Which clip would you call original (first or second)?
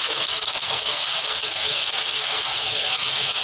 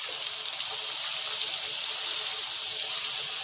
second